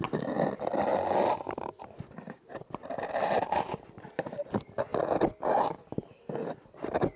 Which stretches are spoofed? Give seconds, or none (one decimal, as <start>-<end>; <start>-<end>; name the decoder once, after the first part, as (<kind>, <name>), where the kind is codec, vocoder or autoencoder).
none